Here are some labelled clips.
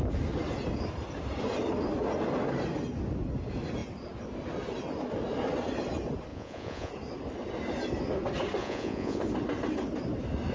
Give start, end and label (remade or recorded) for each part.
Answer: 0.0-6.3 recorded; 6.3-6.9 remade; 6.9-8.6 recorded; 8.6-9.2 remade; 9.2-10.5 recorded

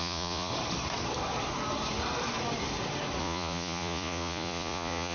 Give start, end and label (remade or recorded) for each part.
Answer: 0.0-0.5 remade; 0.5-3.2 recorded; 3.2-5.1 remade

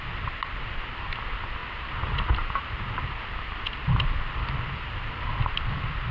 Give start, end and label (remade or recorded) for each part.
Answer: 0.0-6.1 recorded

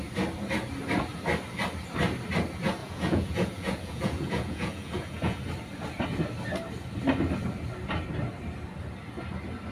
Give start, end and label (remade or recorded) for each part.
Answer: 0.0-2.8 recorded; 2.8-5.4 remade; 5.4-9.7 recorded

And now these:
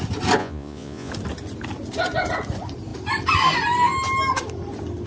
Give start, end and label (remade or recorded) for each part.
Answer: 0.0-0.4 recorded; 0.4-1.1 remade; 1.1-5.1 recorded

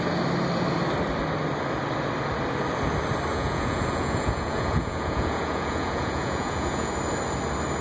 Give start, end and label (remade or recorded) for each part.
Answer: 0.0-3.3 recorded; 3.3-6.9 remade; 6.9-7.8 recorded

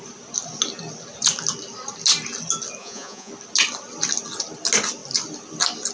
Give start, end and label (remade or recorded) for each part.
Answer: 0.0-2.8 recorded; 2.8-3.3 remade; 3.3-5.9 recorded